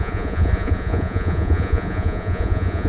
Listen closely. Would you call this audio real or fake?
fake